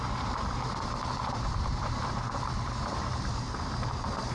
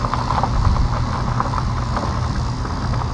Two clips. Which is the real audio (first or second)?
second